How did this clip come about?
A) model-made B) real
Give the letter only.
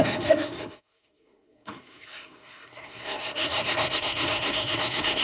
A